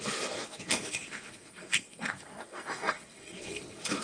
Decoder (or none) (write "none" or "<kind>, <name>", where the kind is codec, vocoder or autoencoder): codec, SNAC